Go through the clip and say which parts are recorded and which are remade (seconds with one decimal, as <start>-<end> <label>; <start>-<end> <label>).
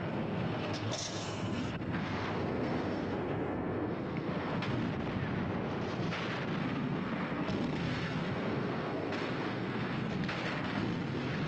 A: 0.0-4.8 remade; 4.8-6.6 recorded; 6.6-11.5 remade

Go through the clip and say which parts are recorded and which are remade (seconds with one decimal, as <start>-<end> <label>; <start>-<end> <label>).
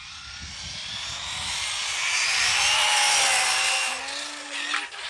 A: 0.0-5.1 recorded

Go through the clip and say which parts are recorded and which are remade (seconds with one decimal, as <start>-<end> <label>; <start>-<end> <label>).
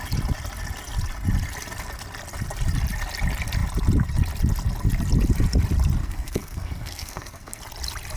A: 0.0-6.0 recorded; 6.0-7.6 remade; 7.6-8.2 recorded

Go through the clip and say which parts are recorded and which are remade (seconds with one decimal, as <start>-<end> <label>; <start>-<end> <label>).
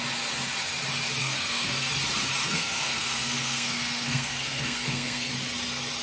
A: 0.0-1.2 recorded; 1.2-1.9 remade; 1.9-2.4 recorded; 2.4-5.3 remade; 5.3-6.0 recorded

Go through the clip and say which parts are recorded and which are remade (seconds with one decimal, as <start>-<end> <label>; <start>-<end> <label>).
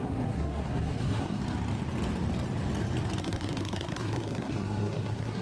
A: 0.0-1.4 remade; 1.4-3.2 recorded; 3.2-5.4 remade